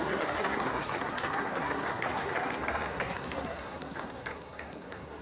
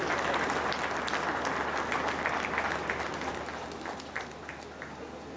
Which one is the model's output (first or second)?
first